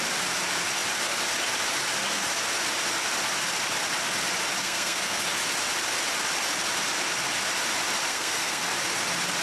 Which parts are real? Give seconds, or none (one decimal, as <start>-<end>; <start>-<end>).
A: 0.0-4.6; 5.2-8.1; 8.6-9.4